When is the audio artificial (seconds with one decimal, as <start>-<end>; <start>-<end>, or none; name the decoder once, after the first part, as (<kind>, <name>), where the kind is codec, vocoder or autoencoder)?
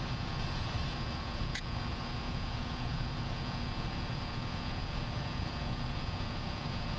0.0-7.0 (vocoder, Vocos)